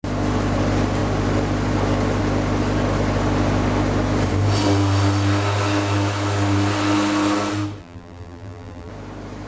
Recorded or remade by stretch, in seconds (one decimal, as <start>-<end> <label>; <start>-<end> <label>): 0.0-7.8 recorded; 7.8-8.9 remade; 8.9-9.5 recorded

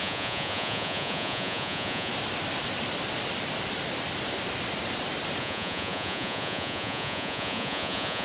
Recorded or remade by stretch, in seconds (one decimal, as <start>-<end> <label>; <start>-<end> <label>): 0.0-2.1 remade; 2.1-5.4 recorded; 5.4-8.2 remade

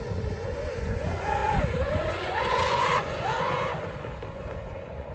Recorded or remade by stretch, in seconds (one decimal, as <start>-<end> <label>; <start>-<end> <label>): 0.0-3.7 remade; 3.7-4.3 recorded; 4.3-5.1 remade

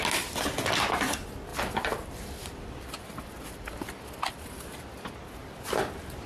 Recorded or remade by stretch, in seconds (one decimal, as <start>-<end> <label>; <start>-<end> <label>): 0.0-1.5 recorded; 1.5-4.8 remade; 4.8-6.3 recorded

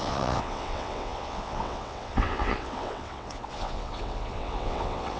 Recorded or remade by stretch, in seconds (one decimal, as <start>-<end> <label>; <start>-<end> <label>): 0.0-5.2 remade

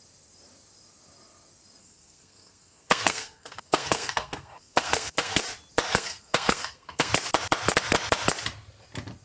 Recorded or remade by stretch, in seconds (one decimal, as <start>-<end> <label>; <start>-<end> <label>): 0.0-1.8 recorded; 1.8-5.4 remade; 5.4-5.9 recorded; 5.9-7.1 remade; 7.1-9.2 recorded